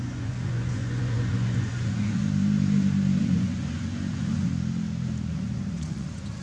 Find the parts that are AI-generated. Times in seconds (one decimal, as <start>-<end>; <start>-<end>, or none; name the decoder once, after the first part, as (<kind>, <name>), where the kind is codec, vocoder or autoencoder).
0.0-2.2 (vocoder, Vocos); 3.2-4.5; 5.3-6.4